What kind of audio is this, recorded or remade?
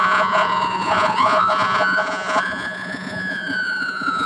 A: remade